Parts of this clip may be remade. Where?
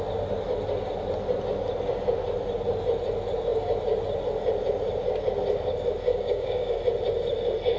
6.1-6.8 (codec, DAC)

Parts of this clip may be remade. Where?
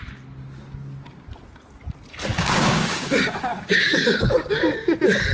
2.3-4.6 (codec, DAC)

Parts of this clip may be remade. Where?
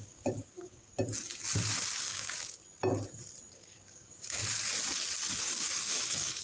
0.0-0.9 (codec, DAC); 2.0-2.6; 3.5-4.4; 5.4-6.4